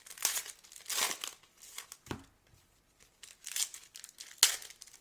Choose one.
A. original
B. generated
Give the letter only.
A